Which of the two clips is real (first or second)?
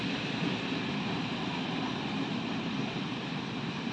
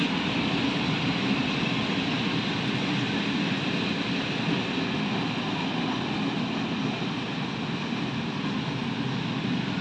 second